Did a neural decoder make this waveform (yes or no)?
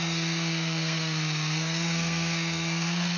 yes